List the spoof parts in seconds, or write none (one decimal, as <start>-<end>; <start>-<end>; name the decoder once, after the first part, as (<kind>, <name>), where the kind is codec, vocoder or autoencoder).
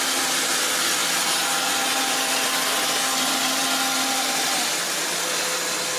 none